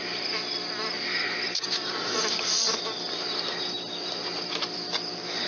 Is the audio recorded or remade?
recorded